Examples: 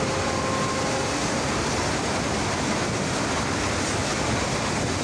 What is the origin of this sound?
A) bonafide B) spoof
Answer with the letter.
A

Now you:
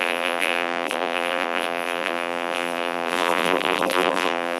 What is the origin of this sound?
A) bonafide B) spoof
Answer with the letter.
B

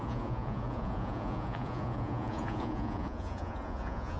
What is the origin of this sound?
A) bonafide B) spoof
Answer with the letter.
B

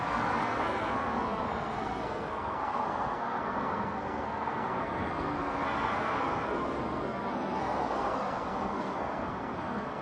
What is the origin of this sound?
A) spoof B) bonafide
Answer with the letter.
A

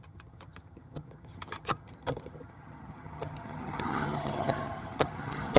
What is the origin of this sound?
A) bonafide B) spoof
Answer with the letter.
B